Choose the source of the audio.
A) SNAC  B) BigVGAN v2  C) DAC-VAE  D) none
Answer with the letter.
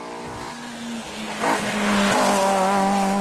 D